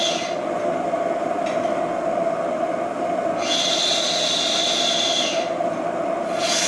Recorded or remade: recorded